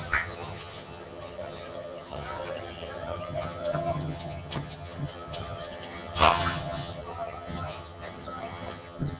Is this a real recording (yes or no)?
no